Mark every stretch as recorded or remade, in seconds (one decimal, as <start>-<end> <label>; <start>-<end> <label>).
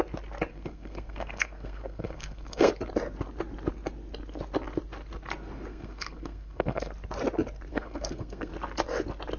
0.0-0.5 recorded; 0.5-2.7 remade; 2.7-5.7 recorded; 5.7-6.9 remade; 6.9-7.7 recorded; 7.7-8.5 remade; 8.5-9.4 recorded